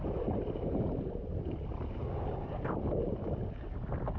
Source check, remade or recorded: recorded